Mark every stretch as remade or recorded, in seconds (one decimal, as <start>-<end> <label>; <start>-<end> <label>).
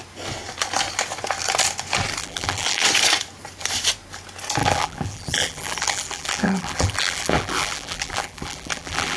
0.0-2.2 recorded; 2.2-2.8 remade; 2.8-4.6 recorded; 4.6-9.2 remade